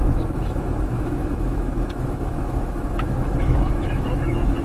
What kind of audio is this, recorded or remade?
remade